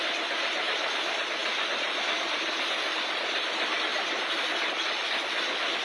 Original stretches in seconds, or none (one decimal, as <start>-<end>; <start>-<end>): 0.0-5.8